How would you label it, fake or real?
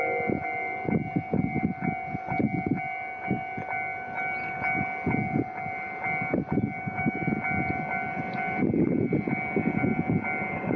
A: real